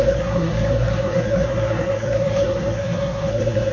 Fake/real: fake